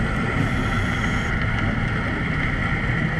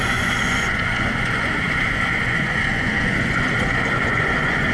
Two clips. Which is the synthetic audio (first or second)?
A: second